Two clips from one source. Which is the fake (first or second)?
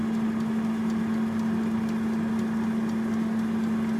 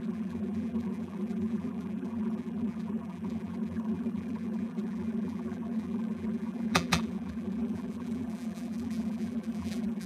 second